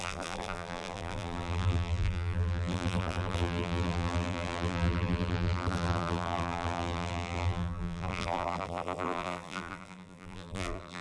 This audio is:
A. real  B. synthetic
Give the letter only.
B